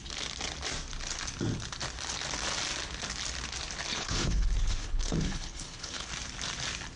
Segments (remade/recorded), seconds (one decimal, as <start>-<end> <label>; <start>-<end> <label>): 0.0-3.9 recorded; 3.9-6.1 remade; 6.1-7.0 recorded